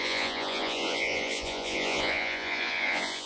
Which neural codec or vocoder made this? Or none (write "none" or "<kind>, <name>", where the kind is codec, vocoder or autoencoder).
vocoder, Vocos